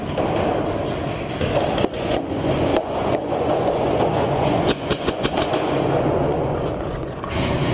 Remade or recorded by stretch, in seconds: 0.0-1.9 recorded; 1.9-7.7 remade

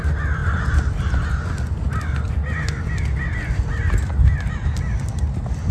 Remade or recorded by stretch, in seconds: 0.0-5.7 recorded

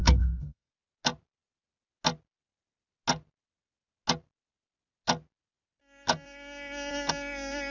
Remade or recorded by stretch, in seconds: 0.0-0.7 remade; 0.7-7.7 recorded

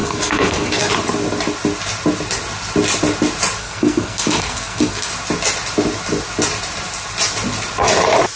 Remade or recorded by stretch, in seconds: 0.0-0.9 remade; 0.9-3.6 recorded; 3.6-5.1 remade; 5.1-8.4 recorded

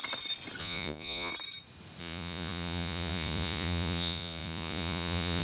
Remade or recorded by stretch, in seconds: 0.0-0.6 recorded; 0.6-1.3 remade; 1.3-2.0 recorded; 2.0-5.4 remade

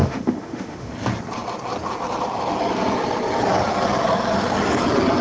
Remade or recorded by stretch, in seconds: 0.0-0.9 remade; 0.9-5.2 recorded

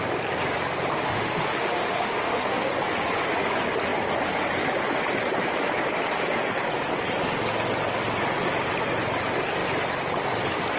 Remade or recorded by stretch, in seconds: 0.0-0.9 recorded; 0.9-2.7 remade; 2.7-10.8 recorded

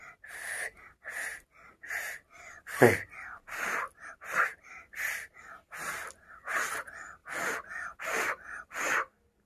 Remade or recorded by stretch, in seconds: 0.0-9.5 recorded